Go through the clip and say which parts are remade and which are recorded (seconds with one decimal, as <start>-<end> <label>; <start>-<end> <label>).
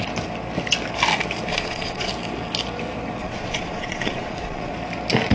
0.0-1.5 recorded; 1.5-2.1 remade; 2.1-3.2 recorded; 3.2-4.7 remade; 4.7-5.3 recorded